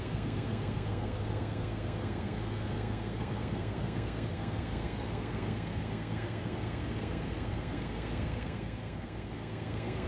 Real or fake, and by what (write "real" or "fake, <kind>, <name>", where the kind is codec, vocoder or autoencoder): fake, codec, SNAC